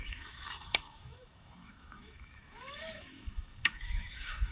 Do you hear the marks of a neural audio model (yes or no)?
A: yes